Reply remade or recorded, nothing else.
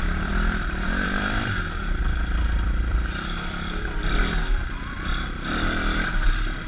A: remade